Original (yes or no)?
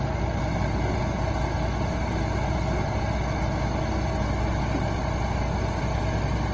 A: yes